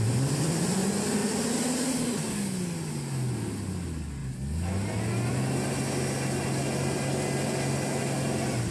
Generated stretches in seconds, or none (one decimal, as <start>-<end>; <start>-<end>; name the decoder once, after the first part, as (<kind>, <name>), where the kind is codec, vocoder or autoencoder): none